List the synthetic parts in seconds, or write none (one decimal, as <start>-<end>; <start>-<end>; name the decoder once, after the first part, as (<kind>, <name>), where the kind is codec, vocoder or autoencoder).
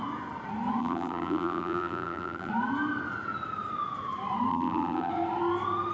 0.8-2.5 (vocoder, BigVGAN v2); 4.5-5.1